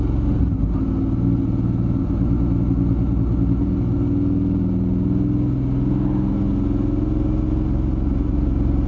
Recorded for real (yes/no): yes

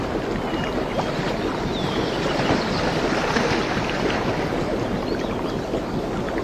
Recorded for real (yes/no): yes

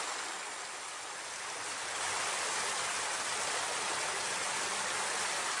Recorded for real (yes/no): yes